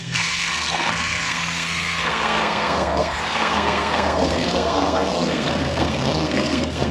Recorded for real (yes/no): no